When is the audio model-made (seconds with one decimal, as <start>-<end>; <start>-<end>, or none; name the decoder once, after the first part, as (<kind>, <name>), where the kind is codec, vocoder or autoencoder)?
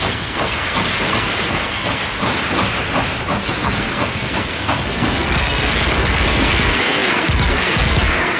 0.0-2.0 (codec, SNAC); 3.4-8.4